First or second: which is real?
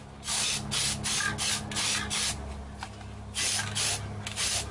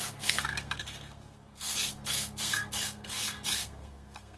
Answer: first